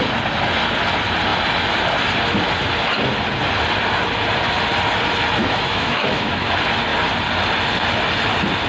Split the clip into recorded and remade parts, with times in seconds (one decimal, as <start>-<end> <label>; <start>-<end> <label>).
0.0-5.4 recorded; 5.4-6.5 remade; 6.5-8.7 recorded